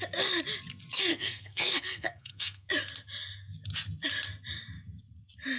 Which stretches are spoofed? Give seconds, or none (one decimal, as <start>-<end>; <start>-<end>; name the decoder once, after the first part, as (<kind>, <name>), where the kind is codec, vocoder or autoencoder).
1.1-2.7 (codec, SNAC)

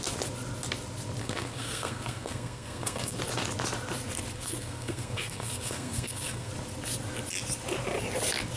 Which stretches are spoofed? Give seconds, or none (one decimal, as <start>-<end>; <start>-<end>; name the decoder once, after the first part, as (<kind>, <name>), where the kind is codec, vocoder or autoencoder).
1.2-3.2 (codec, SNAC); 4.3-6.5

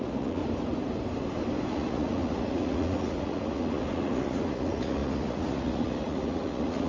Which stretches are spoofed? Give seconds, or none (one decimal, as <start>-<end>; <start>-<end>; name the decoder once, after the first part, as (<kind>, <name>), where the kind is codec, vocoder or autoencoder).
0.0-0.4 (vocoder, Vocos); 1.7-6.9

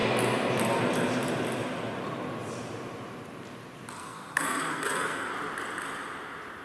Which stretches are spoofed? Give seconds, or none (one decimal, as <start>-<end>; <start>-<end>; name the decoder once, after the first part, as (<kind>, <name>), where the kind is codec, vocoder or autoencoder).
4.0-5.3 (codec, SNAC)

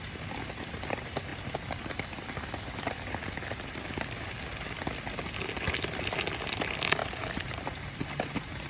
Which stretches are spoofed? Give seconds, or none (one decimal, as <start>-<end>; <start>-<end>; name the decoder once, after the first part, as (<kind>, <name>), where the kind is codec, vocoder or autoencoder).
7.0-8.7 (vocoder, BigVGAN v2)

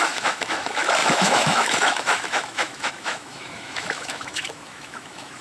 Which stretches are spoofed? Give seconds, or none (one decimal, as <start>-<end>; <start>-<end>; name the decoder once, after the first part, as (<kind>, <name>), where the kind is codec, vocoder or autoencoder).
0.0-5.4 (autoencoder, DAC-VAE)

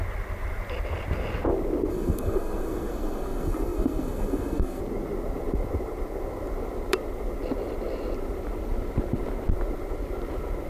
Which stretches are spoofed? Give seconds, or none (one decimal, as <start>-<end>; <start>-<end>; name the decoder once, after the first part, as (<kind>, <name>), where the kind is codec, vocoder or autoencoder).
1.9-4.8 (codec, SNAC)